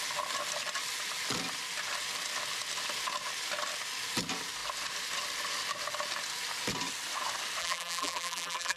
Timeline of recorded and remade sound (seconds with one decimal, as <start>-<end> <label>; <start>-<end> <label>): 0.0-7.6 recorded; 7.6-8.8 remade